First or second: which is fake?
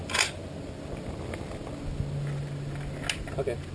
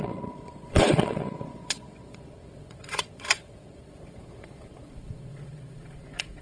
second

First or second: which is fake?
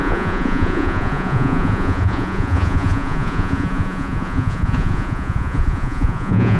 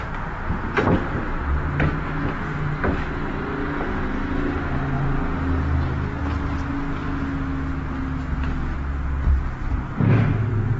first